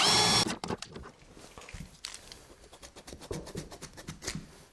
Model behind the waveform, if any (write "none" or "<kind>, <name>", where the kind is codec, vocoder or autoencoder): none